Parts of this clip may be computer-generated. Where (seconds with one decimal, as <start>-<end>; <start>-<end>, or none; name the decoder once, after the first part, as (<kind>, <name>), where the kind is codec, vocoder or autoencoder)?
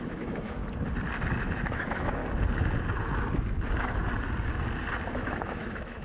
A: 0.0-0.6 (autoencoder, DAC-VAE); 1.4-2.2; 5.1-6.0